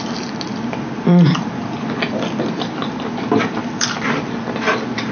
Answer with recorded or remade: recorded